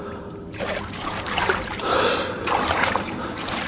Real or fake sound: fake